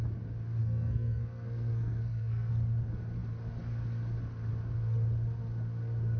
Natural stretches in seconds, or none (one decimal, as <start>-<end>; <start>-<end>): 0.0-0.6; 2.5-6.2